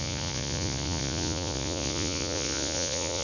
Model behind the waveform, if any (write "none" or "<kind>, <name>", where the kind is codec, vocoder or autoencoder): vocoder, Vocos